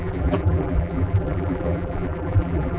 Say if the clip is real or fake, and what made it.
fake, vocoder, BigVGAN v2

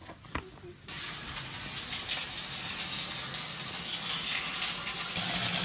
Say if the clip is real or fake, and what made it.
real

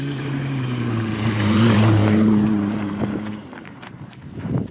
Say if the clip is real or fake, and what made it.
fake, vocoder, BigVGAN v2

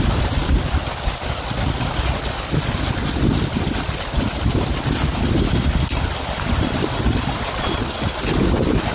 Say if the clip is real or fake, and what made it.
real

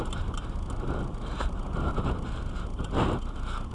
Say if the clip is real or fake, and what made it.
real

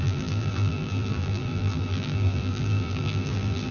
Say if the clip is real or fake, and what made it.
fake, vocoder, BigVGAN v2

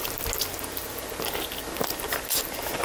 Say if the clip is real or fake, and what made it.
real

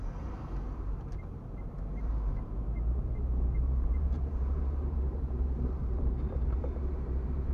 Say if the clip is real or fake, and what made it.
fake, vocoder, BigVGAN v2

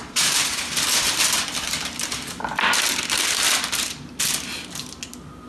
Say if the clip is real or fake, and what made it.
real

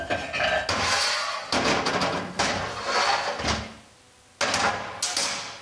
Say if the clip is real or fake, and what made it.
real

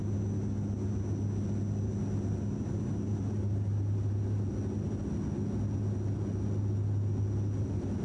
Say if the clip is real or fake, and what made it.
real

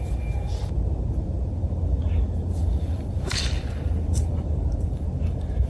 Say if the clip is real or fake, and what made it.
fake, vocoder, BigVGAN v2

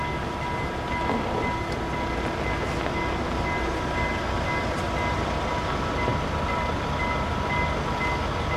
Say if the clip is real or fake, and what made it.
real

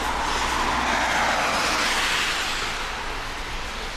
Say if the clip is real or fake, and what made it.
real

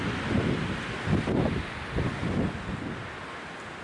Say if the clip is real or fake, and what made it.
real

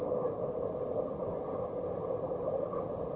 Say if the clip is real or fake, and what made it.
real